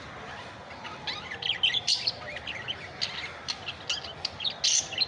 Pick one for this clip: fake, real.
real